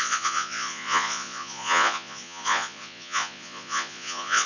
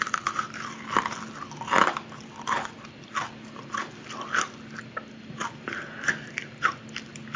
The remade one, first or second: first